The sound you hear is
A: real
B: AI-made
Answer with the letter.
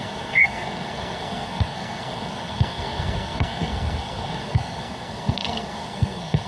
B